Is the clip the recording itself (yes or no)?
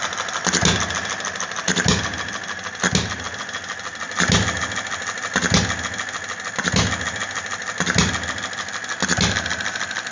yes